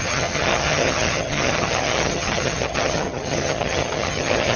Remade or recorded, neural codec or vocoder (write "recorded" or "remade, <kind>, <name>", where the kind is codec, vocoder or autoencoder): remade, vocoder, HiFi-GAN